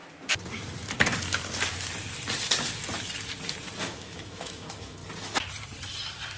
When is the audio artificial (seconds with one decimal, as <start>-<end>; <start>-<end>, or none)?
3.8-5.0

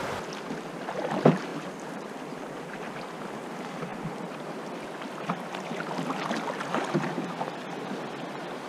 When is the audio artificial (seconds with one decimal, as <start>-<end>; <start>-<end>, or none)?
none

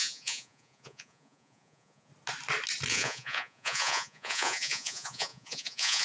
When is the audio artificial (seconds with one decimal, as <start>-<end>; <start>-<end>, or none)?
0.0-2.1; 2.9-6.0

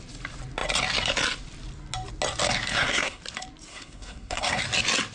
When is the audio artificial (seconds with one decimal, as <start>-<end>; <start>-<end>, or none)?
2.7-3.2; 3.7-4.6